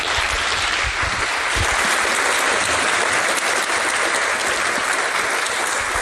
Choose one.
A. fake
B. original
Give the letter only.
B